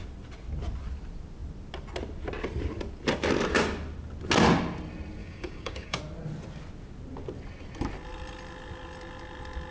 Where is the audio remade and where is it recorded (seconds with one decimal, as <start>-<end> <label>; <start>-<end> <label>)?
0.0-5.2 recorded; 5.2-6.0 remade; 6.0-9.7 recorded